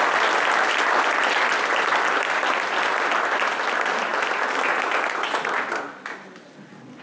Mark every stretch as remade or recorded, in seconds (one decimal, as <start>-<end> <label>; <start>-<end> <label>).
0.0-7.0 recorded